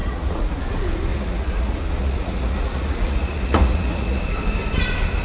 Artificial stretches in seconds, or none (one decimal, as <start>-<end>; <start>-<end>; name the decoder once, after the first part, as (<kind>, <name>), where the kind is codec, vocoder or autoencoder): 0.0-0.6 (vocoder, Vocos); 1.1-4.2